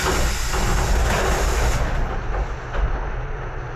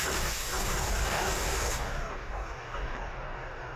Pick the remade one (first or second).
second